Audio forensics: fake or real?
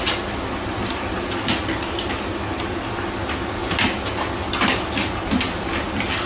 real